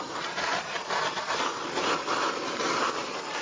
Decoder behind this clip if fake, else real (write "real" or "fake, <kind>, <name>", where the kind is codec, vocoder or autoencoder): fake, vocoder, BigVGAN v2